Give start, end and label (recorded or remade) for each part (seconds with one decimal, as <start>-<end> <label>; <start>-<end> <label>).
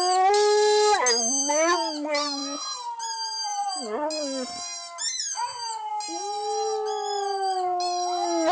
0.0-8.5 recorded